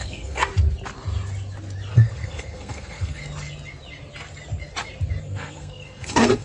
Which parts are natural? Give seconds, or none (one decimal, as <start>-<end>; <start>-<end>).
0.5-1.9; 3.2-5.2